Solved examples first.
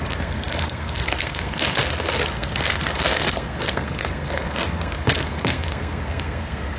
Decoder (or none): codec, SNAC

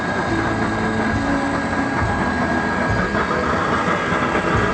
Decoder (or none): none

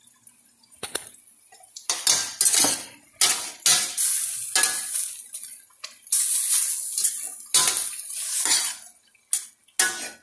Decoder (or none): none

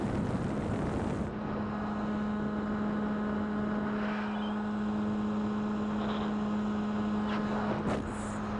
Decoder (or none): none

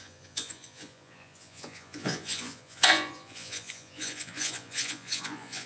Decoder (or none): vocoder, Vocos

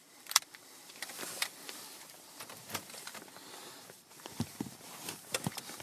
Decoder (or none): vocoder, BigVGAN v2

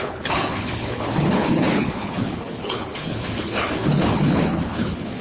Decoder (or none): codec, HILCodec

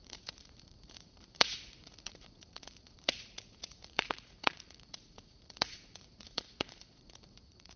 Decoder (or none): vocoder, Vocos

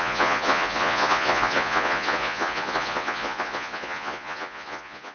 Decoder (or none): vocoder, Vocos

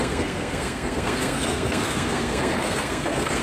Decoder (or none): codec, SNAC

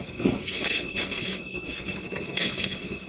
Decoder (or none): codec, SNAC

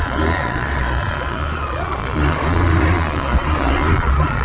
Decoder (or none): vocoder, Vocos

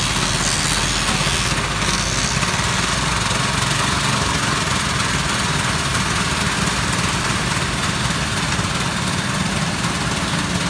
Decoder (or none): none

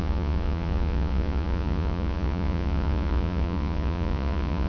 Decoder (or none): vocoder, Vocos